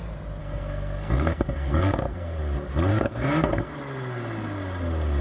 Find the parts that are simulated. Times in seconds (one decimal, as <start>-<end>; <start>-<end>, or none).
0.4-2.4; 2.9-3.7